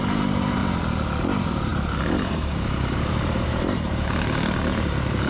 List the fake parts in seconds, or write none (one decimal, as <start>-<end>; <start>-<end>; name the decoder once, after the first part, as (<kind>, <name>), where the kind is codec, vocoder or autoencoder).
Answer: 0.0-0.6 (vocoder, BigVGAN v2); 1.2-5.3